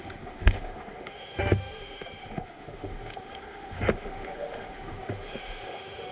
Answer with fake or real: fake